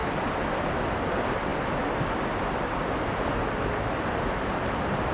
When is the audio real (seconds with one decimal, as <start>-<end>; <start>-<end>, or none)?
0.0-5.1